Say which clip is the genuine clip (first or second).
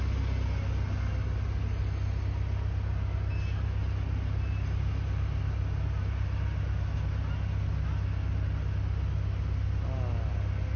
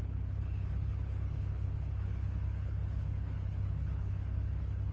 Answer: first